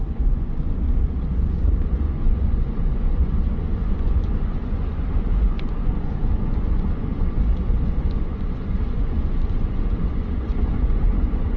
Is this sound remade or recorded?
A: remade